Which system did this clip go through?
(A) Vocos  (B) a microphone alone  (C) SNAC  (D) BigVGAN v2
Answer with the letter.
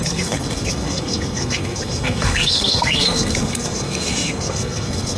C